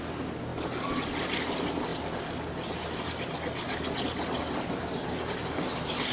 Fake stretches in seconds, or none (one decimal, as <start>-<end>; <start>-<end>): none